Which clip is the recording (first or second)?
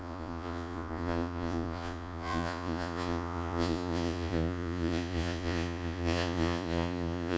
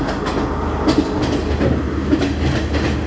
second